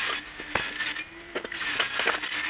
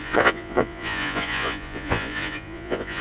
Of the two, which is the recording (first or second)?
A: first